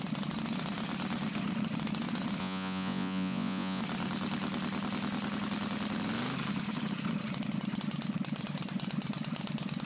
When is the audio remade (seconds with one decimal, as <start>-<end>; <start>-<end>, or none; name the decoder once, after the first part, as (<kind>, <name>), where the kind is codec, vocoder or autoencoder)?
2.4-3.8 (vocoder, Vocos)